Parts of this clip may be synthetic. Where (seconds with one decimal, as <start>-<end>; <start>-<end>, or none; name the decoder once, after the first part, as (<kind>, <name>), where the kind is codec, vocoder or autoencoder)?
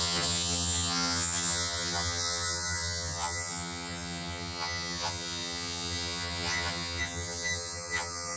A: 0.0-8.4 (vocoder, HiFi-GAN)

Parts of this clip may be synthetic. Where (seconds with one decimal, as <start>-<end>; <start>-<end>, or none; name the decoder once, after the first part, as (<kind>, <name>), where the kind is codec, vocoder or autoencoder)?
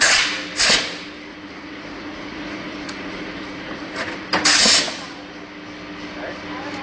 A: 1.3-4.3 (vocoder, Vocos); 4.8-5.3